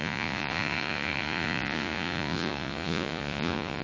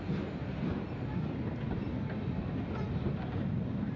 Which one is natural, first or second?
second